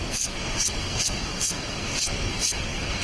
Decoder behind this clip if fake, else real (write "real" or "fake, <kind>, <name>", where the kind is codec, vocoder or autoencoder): fake, codec, SNAC